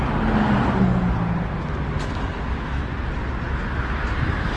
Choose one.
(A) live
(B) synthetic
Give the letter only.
A